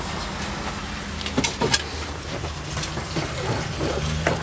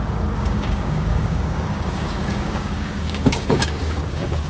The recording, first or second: first